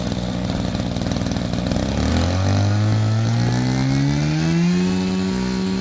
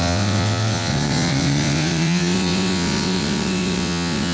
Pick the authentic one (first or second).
first